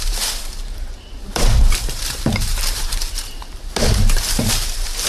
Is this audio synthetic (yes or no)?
yes